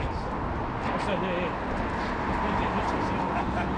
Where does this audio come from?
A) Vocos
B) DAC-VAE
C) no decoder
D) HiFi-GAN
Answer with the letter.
C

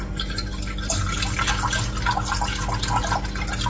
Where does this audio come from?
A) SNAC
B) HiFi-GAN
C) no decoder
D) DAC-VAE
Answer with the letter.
C